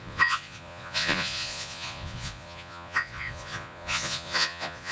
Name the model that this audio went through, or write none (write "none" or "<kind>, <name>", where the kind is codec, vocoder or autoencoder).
vocoder, Vocos